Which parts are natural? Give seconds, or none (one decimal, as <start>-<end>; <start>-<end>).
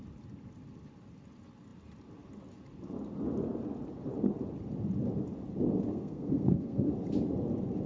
0.0-5.9; 6.9-7.9